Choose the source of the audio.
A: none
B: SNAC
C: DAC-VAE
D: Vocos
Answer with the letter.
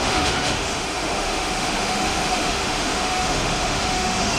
C